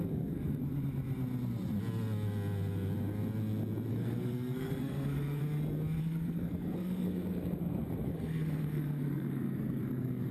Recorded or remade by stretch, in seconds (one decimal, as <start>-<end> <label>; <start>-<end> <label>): 0.0-0.6 remade; 0.6-3.9 recorded; 3.9-5.4 remade; 5.4-6.0 recorded; 6.0-10.3 remade